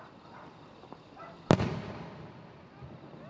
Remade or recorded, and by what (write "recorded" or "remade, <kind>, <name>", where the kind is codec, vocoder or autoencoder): recorded